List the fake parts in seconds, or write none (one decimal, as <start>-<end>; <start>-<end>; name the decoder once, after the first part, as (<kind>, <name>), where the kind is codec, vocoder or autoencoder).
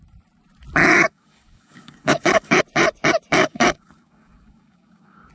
0.8-2.6 (codec, DAC); 3.4-5.3